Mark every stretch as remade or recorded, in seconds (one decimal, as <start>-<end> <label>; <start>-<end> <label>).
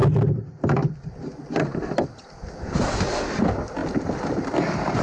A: 0.0-3.0 remade; 3.0-3.8 recorded; 3.8-5.0 remade